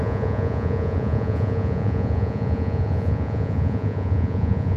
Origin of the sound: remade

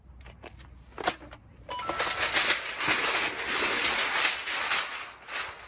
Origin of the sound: recorded